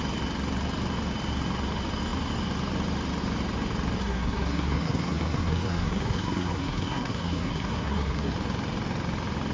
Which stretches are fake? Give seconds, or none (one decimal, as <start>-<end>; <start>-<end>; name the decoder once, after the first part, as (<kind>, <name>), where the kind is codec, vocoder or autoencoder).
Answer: 4.0-8.3 (codec, SNAC)